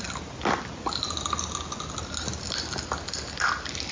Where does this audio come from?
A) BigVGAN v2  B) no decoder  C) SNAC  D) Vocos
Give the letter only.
B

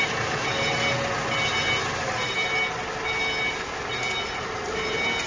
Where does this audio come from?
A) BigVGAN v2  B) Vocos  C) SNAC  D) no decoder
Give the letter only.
D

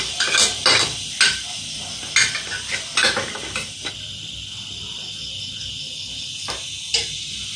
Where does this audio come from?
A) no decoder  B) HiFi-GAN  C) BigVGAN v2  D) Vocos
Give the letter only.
A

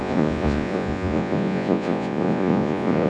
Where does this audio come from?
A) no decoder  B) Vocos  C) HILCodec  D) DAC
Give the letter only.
B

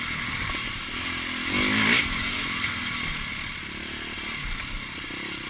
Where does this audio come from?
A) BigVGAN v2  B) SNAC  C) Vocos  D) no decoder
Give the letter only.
D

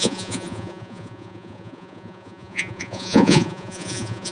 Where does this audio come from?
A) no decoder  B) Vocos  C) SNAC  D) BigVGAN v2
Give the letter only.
B